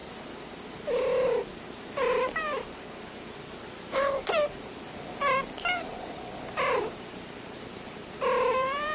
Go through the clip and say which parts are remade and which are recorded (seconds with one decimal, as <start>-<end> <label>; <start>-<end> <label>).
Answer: 0.0-2.4 recorded; 2.4-5.2 remade; 5.2-6.1 recorded; 6.1-8.9 remade